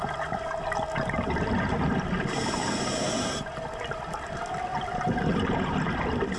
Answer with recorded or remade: recorded